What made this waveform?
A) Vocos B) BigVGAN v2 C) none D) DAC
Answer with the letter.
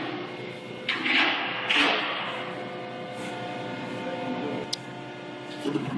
C